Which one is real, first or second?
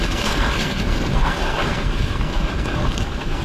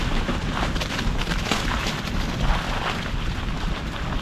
second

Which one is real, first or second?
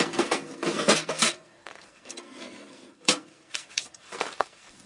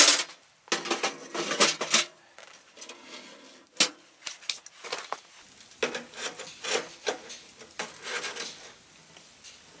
second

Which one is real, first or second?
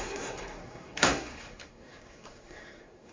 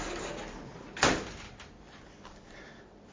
second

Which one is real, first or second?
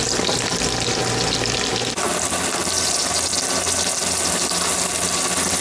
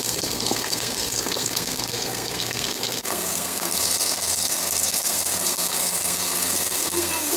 first